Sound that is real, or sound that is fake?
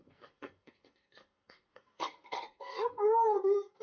fake